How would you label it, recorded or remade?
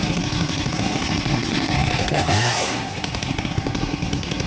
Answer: remade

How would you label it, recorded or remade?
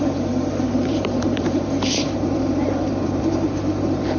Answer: remade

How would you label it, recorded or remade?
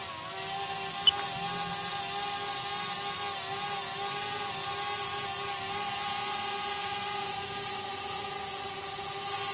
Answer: recorded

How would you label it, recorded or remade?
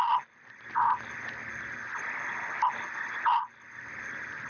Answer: recorded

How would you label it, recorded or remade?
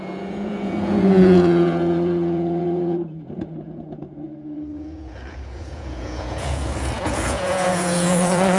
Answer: remade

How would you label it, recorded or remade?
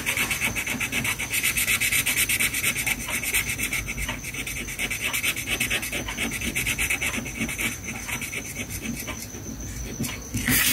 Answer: recorded